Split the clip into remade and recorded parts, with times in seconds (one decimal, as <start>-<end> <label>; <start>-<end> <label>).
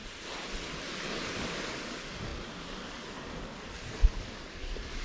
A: 0.0-0.9 recorded; 0.9-5.0 remade